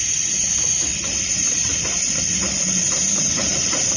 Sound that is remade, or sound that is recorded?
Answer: remade